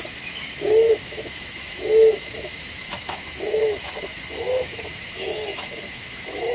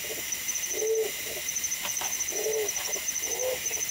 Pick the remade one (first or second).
first